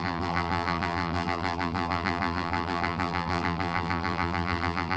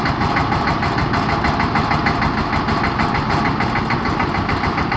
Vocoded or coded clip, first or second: first